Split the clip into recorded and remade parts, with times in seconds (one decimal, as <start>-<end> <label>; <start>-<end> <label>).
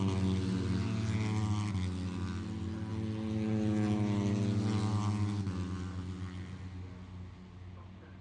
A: 0.0-8.2 recorded